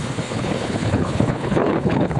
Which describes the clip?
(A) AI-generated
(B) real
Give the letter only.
A